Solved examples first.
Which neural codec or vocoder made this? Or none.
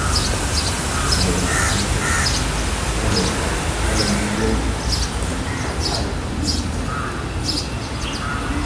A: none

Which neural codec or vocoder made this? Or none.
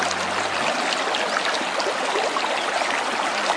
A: none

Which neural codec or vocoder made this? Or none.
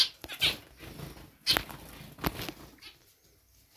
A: none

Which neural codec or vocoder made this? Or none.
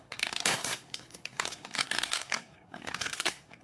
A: codec, SNAC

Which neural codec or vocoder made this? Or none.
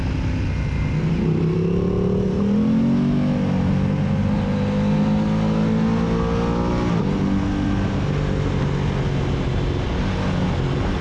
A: none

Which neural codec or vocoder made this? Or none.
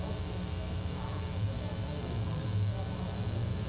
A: autoencoder, DAC-VAE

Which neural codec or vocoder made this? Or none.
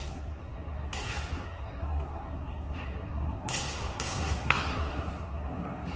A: codec, SNAC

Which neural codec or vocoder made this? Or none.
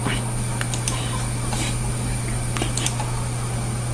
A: none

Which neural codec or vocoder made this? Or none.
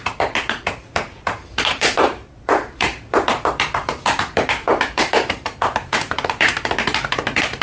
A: vocoder, BigVGAN v2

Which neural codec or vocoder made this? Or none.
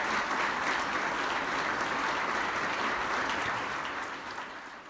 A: none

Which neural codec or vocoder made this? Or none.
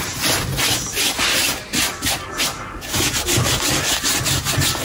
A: none